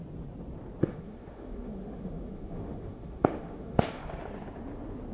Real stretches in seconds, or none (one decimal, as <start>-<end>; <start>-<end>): 0.0-0.9; 4.0-5.1